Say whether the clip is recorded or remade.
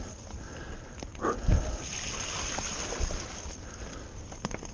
recorded